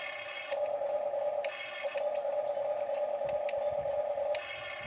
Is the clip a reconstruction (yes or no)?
no